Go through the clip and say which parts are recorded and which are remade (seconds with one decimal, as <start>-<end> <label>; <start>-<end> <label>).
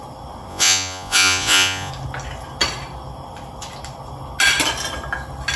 0.0-0.5 recorded; 0.5-1.9 remade; 1.9-5.6 recorded